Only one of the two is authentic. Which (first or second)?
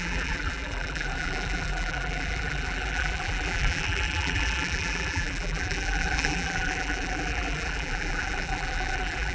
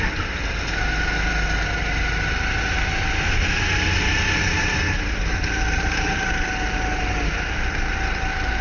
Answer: second